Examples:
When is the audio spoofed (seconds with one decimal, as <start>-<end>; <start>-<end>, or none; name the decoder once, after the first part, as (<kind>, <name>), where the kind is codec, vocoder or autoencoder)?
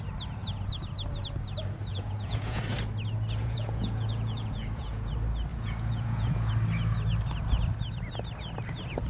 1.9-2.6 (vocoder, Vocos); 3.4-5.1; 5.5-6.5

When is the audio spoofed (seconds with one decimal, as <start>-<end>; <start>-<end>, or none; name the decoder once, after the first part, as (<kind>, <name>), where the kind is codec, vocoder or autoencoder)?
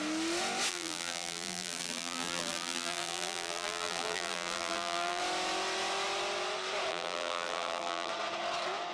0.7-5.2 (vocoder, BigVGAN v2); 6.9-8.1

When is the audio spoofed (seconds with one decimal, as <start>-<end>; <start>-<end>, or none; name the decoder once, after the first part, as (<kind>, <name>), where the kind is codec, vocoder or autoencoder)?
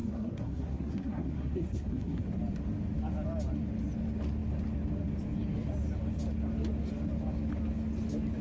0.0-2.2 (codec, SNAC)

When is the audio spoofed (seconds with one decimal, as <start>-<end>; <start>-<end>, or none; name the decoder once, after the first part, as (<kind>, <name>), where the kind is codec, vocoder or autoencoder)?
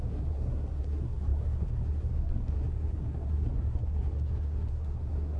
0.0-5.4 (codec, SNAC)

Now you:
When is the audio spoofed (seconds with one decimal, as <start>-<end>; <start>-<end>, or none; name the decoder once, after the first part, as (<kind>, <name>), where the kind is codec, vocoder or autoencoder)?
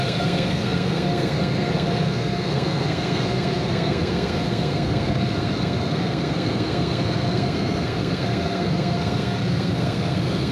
0.0-10.5 (codec, SNAC)